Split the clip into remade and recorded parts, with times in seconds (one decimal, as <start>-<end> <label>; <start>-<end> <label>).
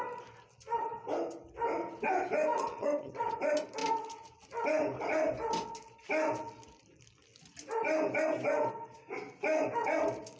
0.0-2.5 recorded; 2.5-3.3 remade; 3.3-10.4 recorded